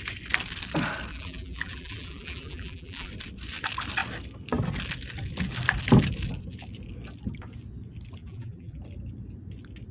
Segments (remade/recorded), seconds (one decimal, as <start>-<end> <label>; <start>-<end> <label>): 0.0-1.1 recorded; 1.1-3.1 remade; 3.1-8.2 recorded; 8.2-8.8 remade; 8.8-9.9 recorded